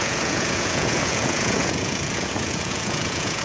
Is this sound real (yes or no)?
no